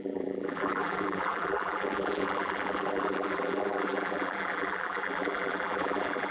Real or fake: fake